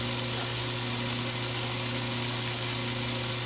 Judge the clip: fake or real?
real